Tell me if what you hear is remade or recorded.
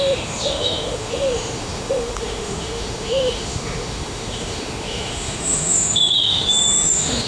remade